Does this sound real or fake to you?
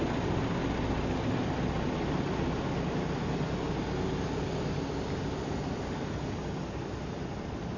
real